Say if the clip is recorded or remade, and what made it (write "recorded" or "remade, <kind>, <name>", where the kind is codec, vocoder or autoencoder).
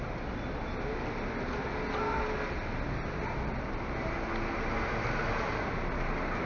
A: recorded